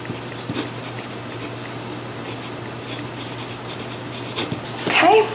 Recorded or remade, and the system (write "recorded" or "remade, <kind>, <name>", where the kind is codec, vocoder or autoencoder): recorded